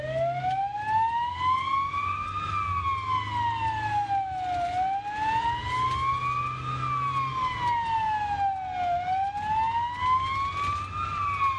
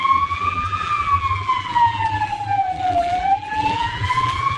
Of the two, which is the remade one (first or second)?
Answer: second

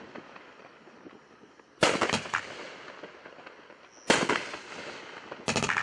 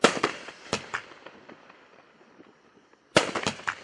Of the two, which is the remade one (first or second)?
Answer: second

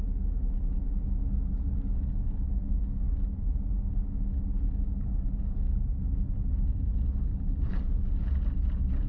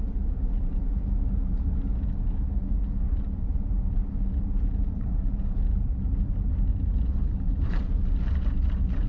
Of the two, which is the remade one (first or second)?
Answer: second